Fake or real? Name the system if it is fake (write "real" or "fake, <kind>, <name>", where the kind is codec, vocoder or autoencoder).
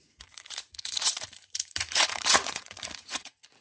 fake, vocoder, Vocos